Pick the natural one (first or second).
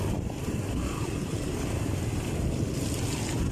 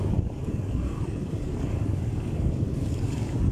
first